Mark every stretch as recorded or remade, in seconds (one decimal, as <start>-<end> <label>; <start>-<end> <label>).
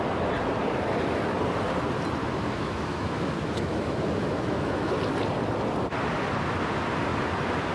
0.0-2.2 recorded; 2.2-4.9 remade; 4.9-7.7 recorded